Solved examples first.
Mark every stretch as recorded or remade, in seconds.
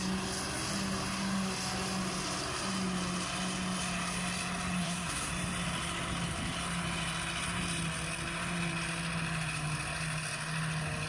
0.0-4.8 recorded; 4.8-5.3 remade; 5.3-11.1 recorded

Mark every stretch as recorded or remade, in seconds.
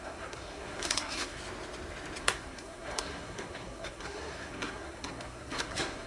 0.0-1.4 remade; 1.4-2.2 recorded; 2.2-6.1 remade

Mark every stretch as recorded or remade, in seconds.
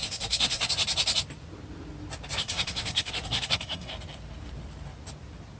0.0-0.7 remade; 0.7-2.4 recorded; 2.4-3.9 remade; 3.9-5.6 recorded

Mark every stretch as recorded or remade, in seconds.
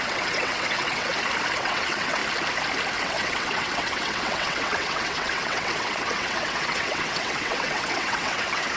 0.0-1.1 remade; 1.1-1.6 recorded; 1.6-2.2 remade; 2.2-3.0 recorded; 3.0-8.8 remade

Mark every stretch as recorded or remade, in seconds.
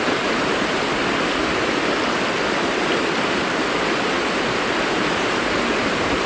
0.0-0.9 remade; 0.9-4.6 recorded; 4.6-6.3 remade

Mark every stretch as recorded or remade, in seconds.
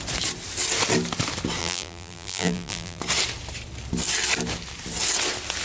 0.0-1.6 recorded; 1.6-3.0 remade; 3.0-5.6 recorded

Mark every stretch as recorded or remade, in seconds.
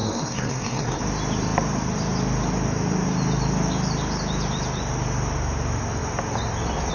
0.0-1.0 remade; 1.0-6.9 recorded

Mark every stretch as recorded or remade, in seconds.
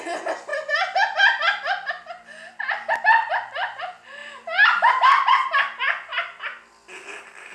0.0-7.5 recorded